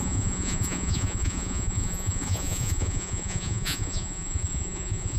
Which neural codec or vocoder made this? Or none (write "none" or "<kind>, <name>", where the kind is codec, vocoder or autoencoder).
vocoder, Vocos